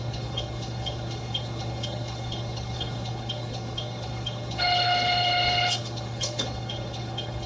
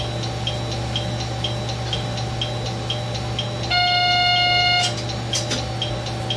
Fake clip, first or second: first